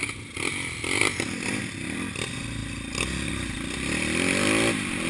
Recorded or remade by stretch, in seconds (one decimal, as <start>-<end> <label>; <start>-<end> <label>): 0.0-1.6 remade; 1.6-5.1 recorded